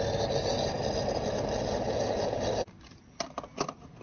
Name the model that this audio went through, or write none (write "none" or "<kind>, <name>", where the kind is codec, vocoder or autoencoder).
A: none